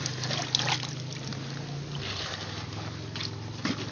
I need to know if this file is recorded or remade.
recorded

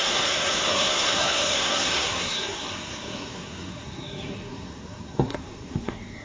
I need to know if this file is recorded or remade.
remade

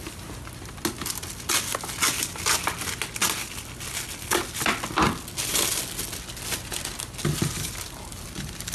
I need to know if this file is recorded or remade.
recorded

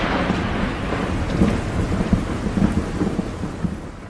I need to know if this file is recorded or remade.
recorded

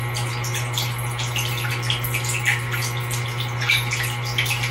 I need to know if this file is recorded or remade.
recorded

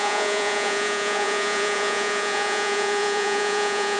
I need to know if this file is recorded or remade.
remade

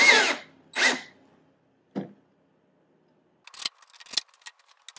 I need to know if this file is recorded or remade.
recorded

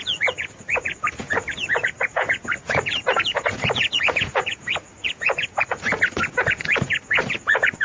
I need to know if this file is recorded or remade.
remade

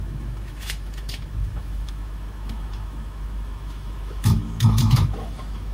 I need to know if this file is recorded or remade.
remade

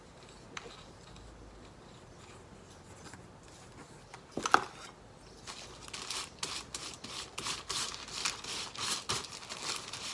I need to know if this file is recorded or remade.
recorded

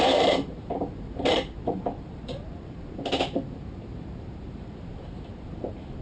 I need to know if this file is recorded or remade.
remade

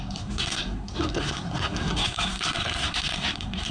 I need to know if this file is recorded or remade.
remade